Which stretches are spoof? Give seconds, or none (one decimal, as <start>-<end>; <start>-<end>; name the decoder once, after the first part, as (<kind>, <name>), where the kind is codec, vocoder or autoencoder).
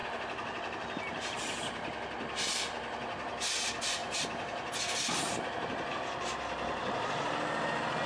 4.0-4.7 (vocoder, BigVGAN v2)